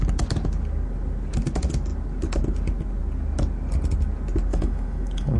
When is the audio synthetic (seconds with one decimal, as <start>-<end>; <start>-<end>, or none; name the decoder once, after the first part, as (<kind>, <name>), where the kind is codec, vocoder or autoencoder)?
4.5-5.4 (autoencoder, DAC-VAE)